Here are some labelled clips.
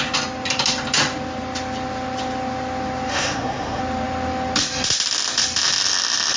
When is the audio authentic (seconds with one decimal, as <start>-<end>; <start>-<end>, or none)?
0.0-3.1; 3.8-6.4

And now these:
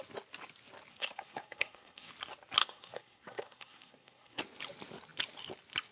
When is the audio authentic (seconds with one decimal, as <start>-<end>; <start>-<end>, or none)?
0.0-0.9; 2.1-2.6; 4.4-5.9

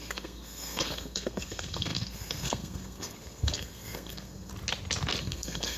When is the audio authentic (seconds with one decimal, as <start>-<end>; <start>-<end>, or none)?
4.5-5.2

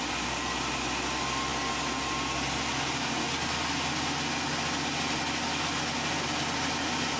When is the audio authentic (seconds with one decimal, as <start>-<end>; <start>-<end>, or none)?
0.0-7.2

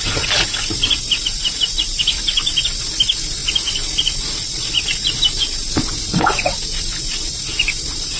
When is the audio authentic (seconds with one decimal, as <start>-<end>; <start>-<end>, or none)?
0.0-8.2